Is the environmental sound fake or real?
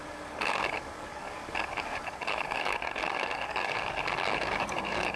fake